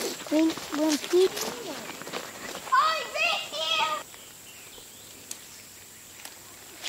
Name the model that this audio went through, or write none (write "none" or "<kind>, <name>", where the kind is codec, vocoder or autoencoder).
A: none